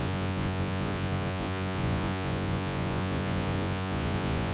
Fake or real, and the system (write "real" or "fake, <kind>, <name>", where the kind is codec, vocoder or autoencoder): fake, vocoder, Vocos